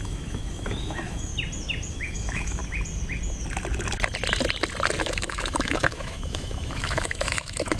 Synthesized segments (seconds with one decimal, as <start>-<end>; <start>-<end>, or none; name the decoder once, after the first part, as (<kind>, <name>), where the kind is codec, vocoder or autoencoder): 0.0-1.3 (autoencoder, DAC-VAE); 1.9-2.6; 5.0-7.8